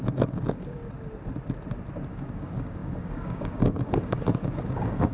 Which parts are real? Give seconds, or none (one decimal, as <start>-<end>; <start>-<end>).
0.8-2.1